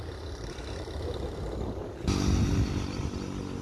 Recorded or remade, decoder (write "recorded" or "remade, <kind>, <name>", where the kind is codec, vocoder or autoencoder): recorded